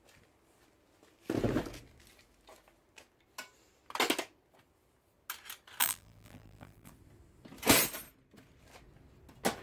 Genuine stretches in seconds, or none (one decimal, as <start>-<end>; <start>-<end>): 0.0-5.8; 6.9-9.6

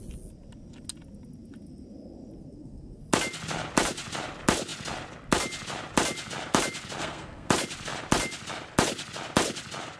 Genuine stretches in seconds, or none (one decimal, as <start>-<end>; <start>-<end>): 0.0-2.4; 3.0-7.0; 7.5-10.0

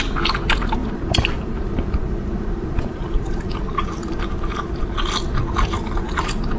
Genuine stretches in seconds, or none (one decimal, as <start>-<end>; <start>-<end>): 0.0-0.8; 4.8-6.6

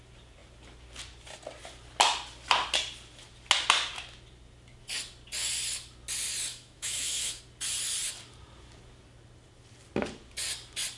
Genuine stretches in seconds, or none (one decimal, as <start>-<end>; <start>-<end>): 0.0-6.5; 7.4-11.0

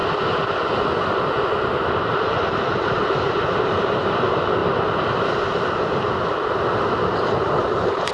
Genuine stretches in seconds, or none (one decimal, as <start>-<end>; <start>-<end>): 0.0-1.7; 4.6-7.3